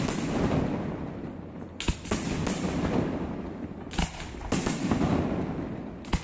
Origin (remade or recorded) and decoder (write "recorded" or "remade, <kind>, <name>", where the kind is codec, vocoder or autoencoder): recorded